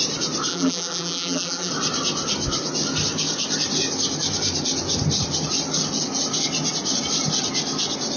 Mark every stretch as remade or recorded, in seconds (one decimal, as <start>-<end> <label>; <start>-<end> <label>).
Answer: 0.0-0.5 recorded; 0.5-1.7 remade; 1.7-8.2 recorded